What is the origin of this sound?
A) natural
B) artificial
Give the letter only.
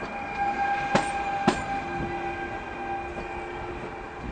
A